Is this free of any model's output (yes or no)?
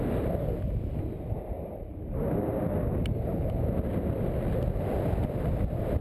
yes